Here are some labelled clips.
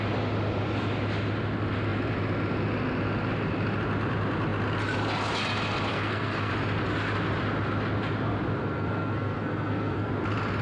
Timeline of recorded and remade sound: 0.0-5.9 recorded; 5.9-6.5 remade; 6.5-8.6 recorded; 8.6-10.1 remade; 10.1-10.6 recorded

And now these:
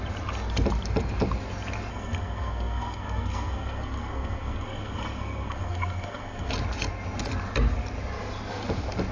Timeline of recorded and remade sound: 0.0-1.9 recorded; 1.9-6.5 remade; 6.5-9.1 recorded

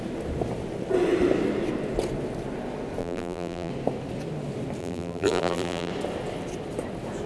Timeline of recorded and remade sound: 0.0-3.0 recorded; 3.0-3.7 remade; 3.7-4.8 recorded; 4.8-5.9 remade; 5.9-7.3 recorded